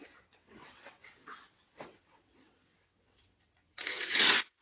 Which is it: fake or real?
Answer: fake